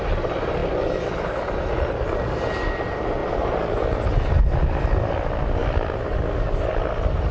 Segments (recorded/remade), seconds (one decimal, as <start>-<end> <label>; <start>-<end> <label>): 0.0-7.3 recorded